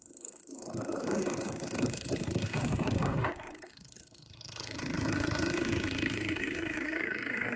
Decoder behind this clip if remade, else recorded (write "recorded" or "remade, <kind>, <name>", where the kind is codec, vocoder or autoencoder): remade, codec, SNAC